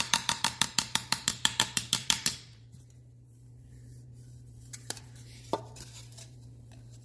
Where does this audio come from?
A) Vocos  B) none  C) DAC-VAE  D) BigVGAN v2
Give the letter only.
D